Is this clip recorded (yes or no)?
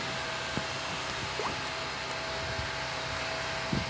yes